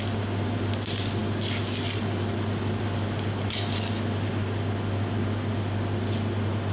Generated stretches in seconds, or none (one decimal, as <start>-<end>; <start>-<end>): none